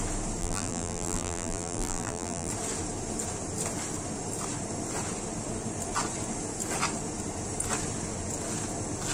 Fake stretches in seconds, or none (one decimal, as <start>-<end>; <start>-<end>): 0.4-2.5